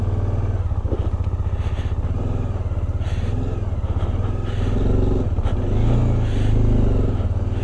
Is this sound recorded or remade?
recorded